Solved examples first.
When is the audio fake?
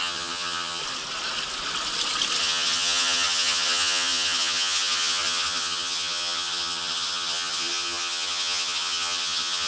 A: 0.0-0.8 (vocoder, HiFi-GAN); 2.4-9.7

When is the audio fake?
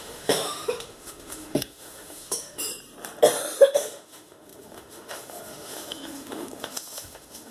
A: 0.0-2.7 (autoencoder, DAC-VAE); 3.7-7.5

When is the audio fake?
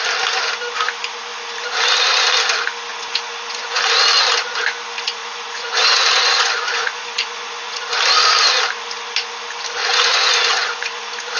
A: 2.9-3.8 (vocoder, Vocos); 5.2-7.8; 9.8-11.0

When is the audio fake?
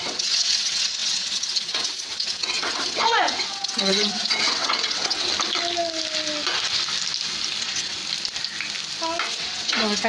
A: 0.0-5.3 (vocoder, WaveNeXt); 7.6-8.0; 9.3-10.1